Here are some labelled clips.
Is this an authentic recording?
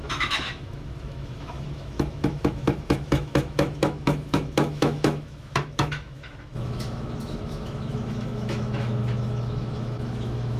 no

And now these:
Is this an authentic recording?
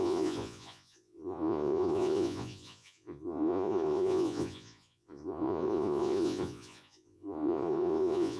no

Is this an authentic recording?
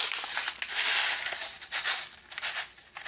yes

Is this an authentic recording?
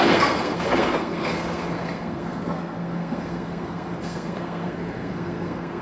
no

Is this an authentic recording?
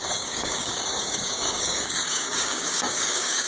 no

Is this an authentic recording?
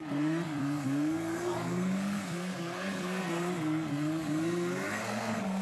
no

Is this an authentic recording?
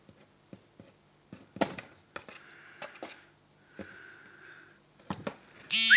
yes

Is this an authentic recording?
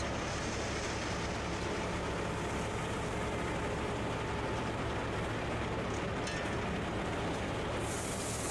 yes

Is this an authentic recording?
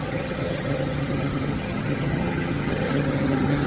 no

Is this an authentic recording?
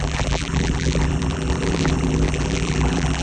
no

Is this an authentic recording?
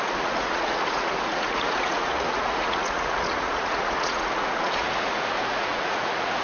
no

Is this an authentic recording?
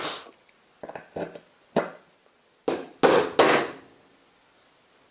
yes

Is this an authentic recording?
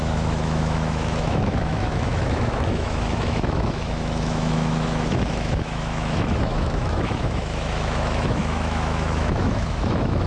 no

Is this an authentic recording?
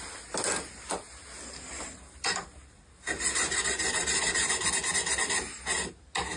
yes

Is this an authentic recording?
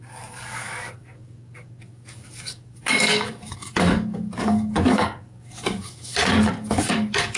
no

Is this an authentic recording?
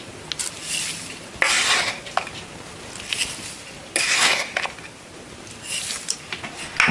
yes